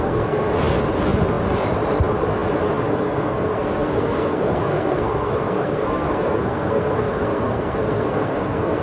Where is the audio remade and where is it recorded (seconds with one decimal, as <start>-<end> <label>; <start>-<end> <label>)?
0.0-0.5 remade; 0.5-2.9 recorded; 2.9-8.8 remade